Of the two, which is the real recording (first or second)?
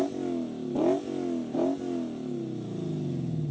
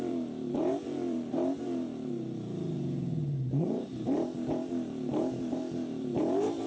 first